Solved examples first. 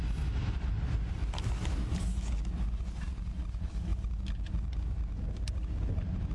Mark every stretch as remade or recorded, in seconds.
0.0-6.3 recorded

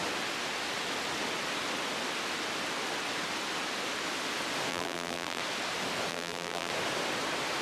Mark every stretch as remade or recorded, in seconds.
0.0-4.7 recorded; 4.7-5.4 remade; 5.4-6.1 recorded; 6.1-6.7 remade; 6.7-7.6 recorded